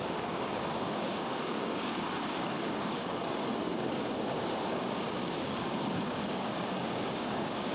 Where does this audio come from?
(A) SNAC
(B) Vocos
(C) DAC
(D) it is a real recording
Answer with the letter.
C